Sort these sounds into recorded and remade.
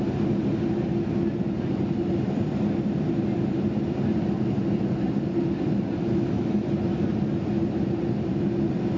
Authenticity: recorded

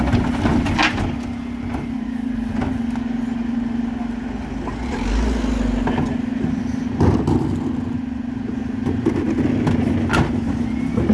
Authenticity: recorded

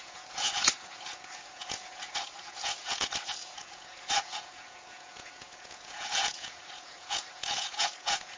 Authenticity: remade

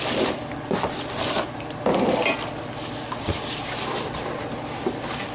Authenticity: recorded